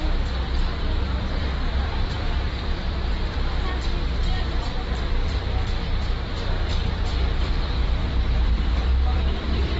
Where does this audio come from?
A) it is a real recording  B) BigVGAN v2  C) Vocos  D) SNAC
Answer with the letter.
B